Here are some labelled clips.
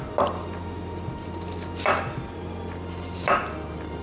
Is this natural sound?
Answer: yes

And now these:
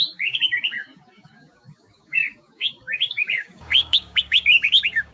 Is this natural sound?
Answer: no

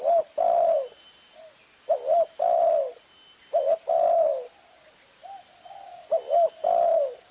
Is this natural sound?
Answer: yes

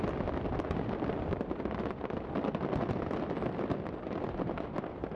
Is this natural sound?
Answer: yes